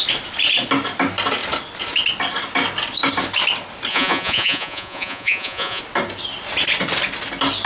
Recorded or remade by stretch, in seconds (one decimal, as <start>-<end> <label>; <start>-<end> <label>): 0.0-3.9 recorded; 3.9-5.8 remade; 5.8-7.7 recorded